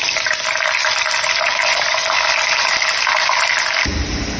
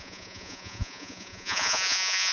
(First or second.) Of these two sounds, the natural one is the first